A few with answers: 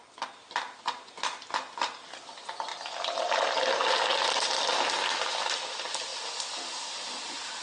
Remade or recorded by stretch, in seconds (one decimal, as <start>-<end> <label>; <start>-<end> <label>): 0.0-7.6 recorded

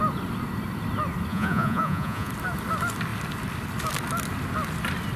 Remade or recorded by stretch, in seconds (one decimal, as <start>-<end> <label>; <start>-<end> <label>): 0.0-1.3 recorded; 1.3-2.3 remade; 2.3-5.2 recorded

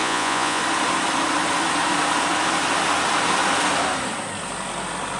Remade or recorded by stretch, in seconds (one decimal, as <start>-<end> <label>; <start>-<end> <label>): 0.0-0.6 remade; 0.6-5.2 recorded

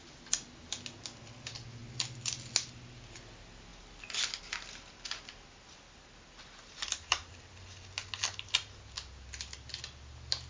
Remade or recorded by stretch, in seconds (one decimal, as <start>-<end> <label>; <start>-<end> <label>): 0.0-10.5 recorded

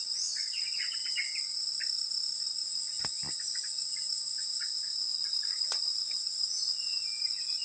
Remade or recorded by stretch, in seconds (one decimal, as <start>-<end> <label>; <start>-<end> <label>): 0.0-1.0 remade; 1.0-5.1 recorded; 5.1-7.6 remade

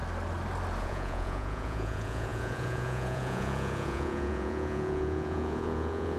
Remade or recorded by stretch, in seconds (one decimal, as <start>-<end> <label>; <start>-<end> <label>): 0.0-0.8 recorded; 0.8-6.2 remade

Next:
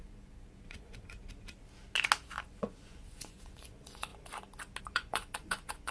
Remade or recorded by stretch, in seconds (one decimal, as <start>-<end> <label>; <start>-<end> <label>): 0.0-1.2 remade; 1.2-2.5 recorded; 2.5-4.1 remade; 4.1-4.8 recorded; 4.8-5.9 remade

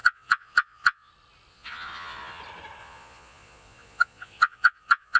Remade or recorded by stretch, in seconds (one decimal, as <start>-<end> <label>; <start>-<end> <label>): 0.0-1.1 remade; 1.1-1.5 recorded; 1.5-2.4 remade; 2.4-2.8 recorded; 2.8-5.2 remade